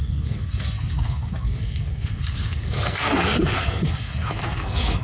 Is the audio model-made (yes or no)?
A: yes